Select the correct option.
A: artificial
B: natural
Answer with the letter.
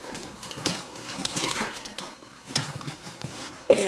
A